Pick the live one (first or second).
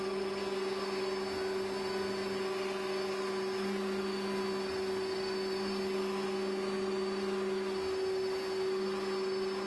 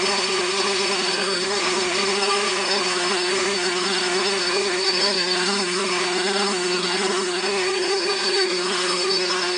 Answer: first